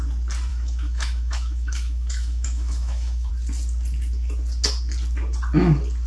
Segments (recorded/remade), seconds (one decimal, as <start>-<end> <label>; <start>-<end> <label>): 0.0-0.5 recorded; 0.5-3.3 remade; 3.3-6.1 recorded